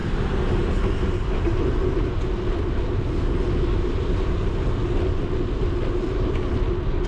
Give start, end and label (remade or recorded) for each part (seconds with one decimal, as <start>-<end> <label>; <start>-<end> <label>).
0.0-7.1 recorded